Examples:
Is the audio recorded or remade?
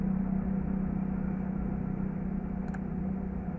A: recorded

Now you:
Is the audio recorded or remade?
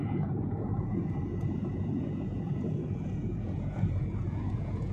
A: remade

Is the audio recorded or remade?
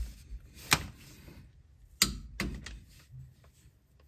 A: recorded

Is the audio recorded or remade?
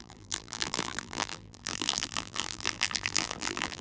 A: remade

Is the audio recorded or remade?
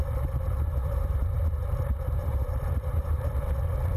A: remade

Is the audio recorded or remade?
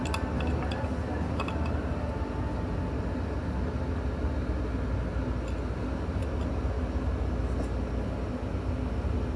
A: recorded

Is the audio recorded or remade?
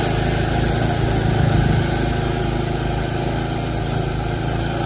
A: recorded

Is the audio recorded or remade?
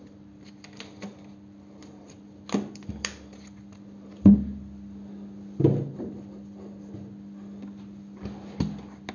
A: recorded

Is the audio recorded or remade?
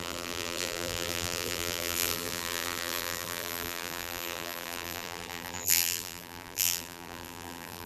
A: remade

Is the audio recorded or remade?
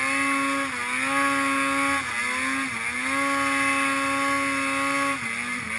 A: recorded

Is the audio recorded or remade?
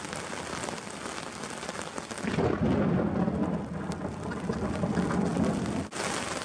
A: recorded